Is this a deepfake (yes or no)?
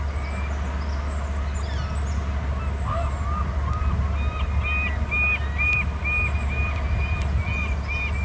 no